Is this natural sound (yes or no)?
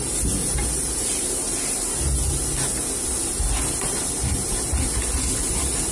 yes